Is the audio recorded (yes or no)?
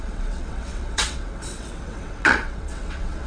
no